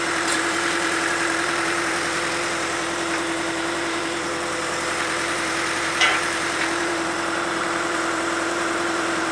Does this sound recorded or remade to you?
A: remade